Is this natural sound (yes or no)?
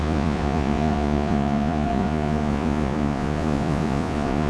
no